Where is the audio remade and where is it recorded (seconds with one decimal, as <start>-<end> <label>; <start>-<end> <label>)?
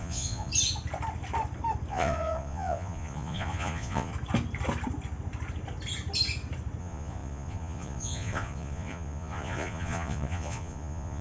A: 0.0-0.5 remade; 0.5-1.9 recorded; 1.9-4.1 remade; 4.1-6.8 recorded; 6.8-11.2 remade